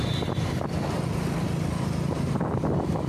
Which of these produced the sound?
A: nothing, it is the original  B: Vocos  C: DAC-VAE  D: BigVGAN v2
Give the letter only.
A